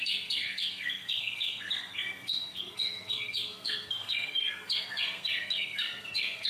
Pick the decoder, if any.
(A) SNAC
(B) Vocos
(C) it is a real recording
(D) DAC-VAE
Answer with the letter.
A